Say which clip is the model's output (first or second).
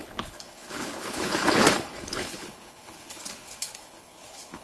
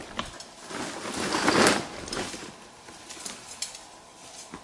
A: first